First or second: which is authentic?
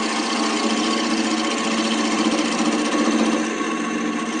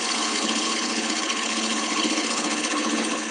first